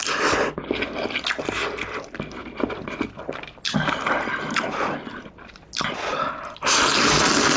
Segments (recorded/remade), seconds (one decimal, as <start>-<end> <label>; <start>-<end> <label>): 0.0-7.6 recorded